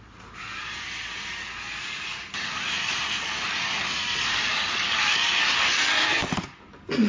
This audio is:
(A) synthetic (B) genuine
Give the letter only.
B